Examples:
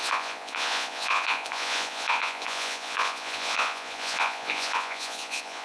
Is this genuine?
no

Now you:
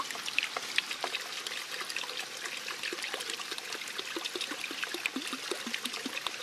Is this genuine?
yes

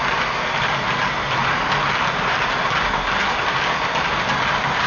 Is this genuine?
yes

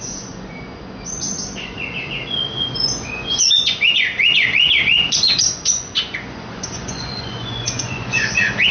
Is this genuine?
no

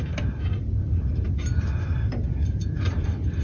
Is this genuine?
yes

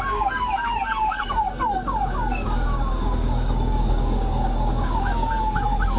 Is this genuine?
no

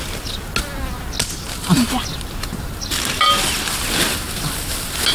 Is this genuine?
yes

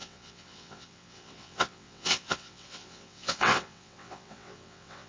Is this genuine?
no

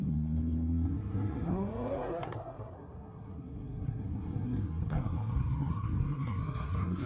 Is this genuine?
no